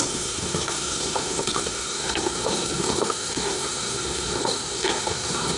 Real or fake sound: fake